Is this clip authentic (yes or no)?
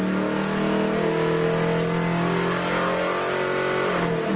yes